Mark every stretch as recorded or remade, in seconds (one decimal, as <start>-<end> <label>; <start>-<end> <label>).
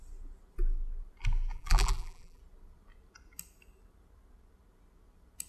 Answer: 0.0-1.5 recorded; 1.5-2.4 remade; 2.4-5.5 recorded